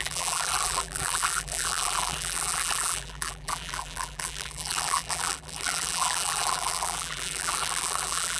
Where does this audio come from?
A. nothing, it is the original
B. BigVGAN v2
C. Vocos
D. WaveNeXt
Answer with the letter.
B